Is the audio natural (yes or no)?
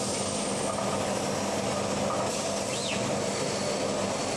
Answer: yes